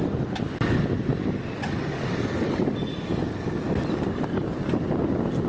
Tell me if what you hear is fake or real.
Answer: real